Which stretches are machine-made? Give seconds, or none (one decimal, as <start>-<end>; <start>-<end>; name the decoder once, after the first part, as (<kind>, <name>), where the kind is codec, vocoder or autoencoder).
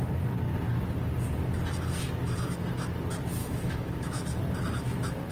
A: 3.4-4.4 (autoencoder, DAC-VAE)